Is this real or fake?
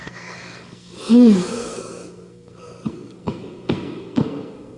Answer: fake